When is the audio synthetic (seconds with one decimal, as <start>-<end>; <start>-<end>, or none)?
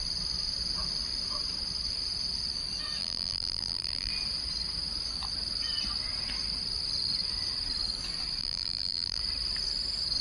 3.0-4.1; 8.4-9.2